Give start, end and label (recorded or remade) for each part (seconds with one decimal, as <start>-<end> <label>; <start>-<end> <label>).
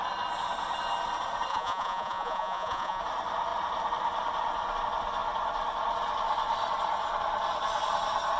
0.0-1.5 recorded; 1.5-3.0 remade; 3.0-8.4 recorded